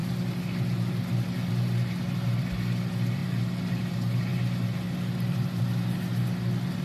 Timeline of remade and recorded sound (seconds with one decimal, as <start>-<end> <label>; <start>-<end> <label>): 0.0-6.8 recorded